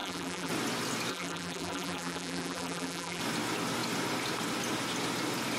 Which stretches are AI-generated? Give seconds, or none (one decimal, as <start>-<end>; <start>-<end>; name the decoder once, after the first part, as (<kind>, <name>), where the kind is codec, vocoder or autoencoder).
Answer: 0.0-0.5 (vocoder, BigVGAN v2); 1.1-3.2